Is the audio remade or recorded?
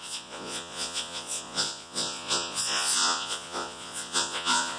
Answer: remade